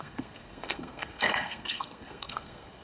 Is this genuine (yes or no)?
no